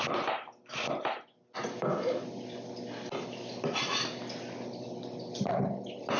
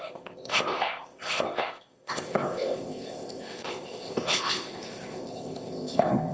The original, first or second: first